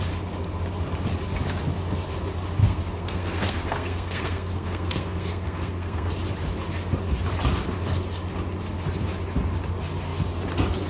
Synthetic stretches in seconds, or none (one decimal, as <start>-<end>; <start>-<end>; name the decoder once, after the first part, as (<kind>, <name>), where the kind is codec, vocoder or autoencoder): 2.6-6.1 (codec, SNAC)

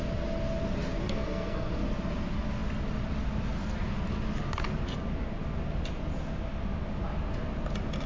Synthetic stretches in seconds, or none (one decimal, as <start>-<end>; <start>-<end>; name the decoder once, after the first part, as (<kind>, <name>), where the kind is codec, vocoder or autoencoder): 1.0-1.8 (codec, SNAC)